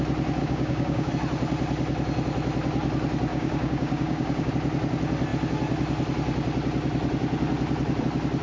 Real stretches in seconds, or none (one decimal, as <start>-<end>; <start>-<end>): 0.0-0.4; 1.1-3.3; 4.5-8.4